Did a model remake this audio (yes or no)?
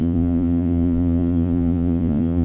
yes